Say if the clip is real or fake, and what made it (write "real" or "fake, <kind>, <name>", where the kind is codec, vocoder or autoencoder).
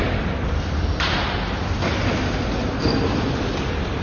real